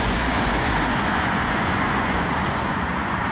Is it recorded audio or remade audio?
remade